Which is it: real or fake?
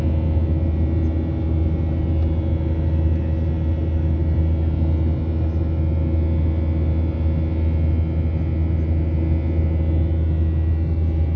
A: real